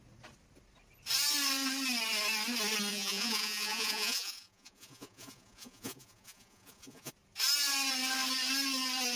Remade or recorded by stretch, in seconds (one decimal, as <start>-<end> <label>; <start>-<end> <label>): 0.0-2.9 recorded; 2.9-7.1 remade; 7.1-9.2 recorded